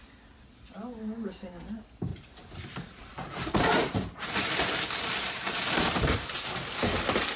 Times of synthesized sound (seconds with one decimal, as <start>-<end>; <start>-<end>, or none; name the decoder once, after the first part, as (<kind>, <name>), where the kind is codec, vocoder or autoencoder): 2.1-6.5 (vocoder, BigVGAN v2)